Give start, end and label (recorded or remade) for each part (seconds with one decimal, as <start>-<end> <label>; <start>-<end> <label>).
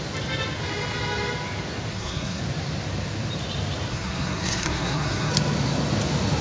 0.0-1.9 recorded; 1.9-2.4 remade; 2.4-3.9 recorded; 3.9-5.3 remade; 5.3-6.4 recorded